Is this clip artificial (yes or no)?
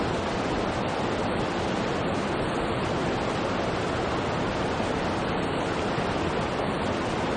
no